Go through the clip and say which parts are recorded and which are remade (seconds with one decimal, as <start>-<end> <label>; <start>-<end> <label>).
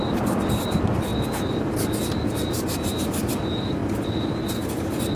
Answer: 0.0-5.2 recorded